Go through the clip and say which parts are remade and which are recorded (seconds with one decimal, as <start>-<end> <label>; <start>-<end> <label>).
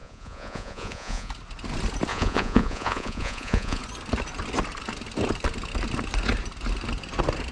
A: 0.0-1.3 remade; 1.3-2.1 recorded; 2.1-3.8 remade; 3.8-7.5 recorded